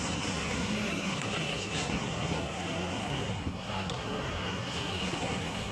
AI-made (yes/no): yes